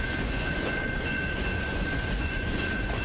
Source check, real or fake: fake